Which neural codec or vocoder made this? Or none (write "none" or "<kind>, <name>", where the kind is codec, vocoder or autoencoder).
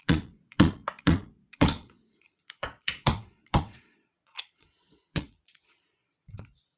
vocoder, Vocos